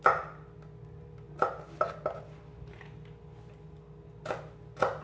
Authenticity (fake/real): real